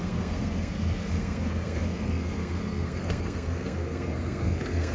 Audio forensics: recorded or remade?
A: remade